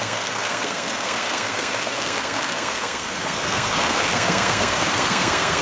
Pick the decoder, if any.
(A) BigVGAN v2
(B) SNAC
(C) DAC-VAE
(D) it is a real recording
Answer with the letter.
B